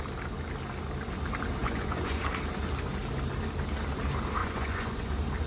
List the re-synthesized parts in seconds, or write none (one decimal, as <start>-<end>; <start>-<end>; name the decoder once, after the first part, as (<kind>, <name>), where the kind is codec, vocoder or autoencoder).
1.6-2.2 (vocoder, Vocos); 4.4-5.1